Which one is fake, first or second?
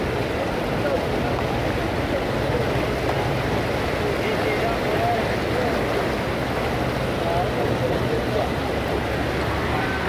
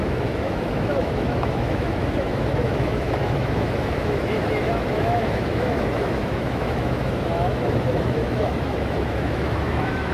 second